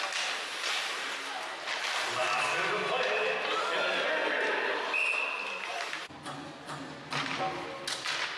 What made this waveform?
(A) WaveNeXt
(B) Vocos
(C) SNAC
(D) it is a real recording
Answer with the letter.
D